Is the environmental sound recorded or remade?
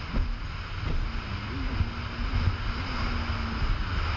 recorded